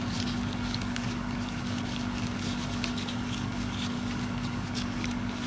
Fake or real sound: fake